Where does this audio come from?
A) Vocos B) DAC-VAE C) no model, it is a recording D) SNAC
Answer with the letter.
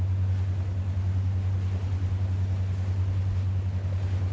C